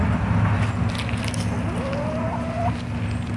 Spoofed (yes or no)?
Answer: no